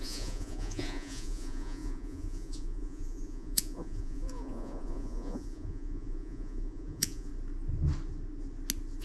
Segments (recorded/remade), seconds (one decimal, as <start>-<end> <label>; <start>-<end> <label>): 0.0-7.3 remade; 7.3-9.0 recorded